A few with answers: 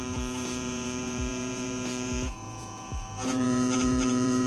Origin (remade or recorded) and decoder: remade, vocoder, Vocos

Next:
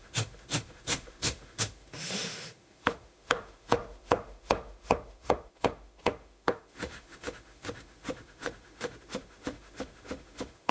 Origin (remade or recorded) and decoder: remade, autoencoder, DAC-VAE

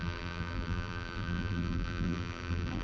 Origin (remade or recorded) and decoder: remade, vocoder, BigVGAN v2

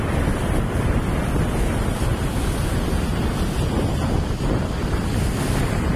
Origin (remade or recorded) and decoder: recorded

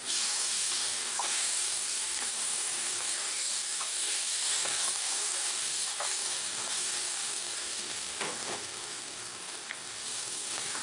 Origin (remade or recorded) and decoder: remade, codec, DAC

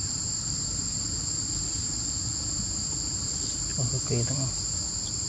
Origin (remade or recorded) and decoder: recorded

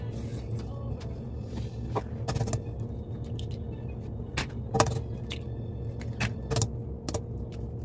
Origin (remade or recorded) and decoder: recorded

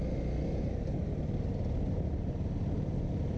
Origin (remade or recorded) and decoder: recorded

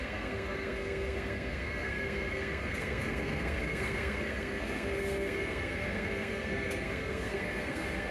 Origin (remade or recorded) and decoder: remade, codec, SNAC